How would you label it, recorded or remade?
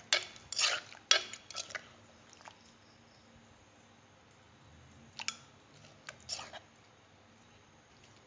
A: recorded